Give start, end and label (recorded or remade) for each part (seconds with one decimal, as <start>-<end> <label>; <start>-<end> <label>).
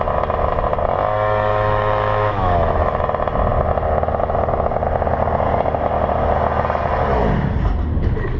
0.0-1.5 recorded; 1.5-3.0 remade; 3.0-8.4 recorded